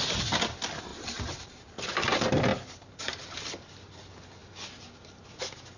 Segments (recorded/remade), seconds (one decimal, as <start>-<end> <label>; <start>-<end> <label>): 0.0-0.9 recorded; 0.9-1.8 remade; 1.8-2.5 recorded; 2.5-3.4 remade; 3.4-5.8 recorded